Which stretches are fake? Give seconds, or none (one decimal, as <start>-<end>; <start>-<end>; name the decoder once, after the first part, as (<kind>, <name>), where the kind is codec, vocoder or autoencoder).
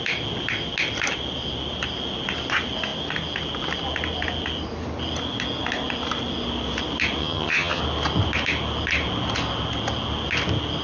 7.2-7.8 (vocoder, HiFi-GAN)